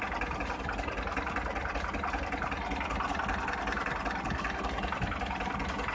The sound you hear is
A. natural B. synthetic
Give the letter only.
A